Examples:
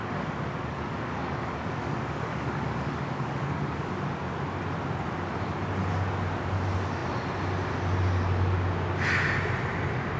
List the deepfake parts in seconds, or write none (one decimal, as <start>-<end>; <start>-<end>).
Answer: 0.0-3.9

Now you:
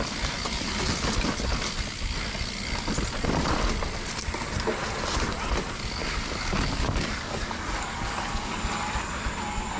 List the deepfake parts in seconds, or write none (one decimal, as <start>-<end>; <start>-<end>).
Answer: 6.0-8.5

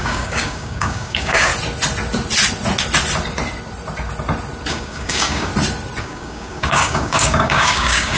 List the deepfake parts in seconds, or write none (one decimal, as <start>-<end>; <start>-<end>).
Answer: 0.0-1.5; 4.7-5.5; 6.0-8.2

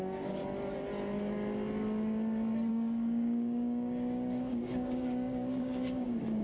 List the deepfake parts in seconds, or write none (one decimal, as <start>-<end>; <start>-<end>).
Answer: 0.0-0.4; 2.7-6.4